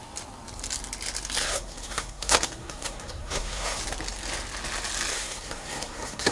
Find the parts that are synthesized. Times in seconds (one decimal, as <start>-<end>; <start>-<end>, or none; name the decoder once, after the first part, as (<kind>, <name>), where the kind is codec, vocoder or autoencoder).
1.4-3.8 (codec, SNAC); 5.1-6.3